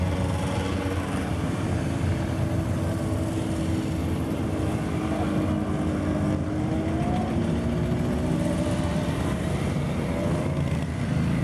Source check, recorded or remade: recorded